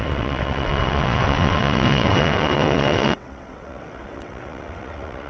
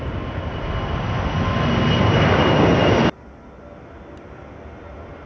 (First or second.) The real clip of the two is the second